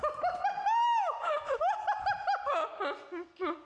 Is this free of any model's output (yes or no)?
yes